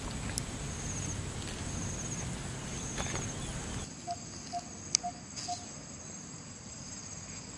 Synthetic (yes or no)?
no